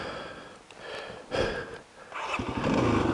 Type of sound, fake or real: real